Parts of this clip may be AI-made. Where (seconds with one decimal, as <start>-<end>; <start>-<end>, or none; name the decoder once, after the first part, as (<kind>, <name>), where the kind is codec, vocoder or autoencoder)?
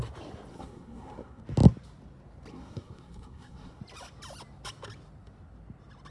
0.5-1.4 (codec, SNAC); 2.5-3.8